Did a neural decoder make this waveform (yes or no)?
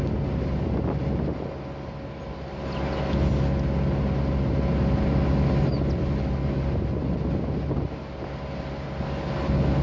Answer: no